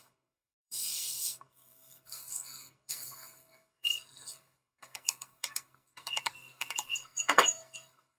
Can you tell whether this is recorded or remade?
remade